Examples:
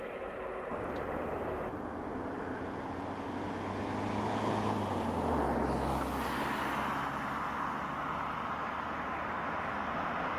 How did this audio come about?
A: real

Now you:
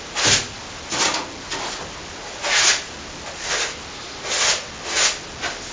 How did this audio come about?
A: real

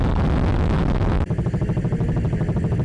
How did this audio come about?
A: real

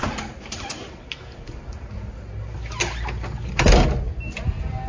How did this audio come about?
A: real